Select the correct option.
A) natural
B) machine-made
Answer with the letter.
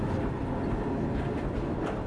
A